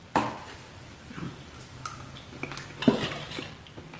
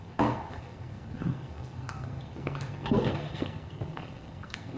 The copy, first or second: second